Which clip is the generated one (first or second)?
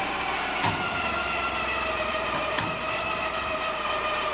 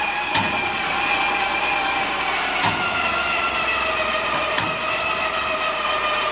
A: first